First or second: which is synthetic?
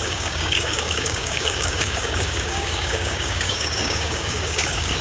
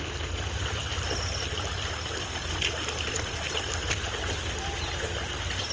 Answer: first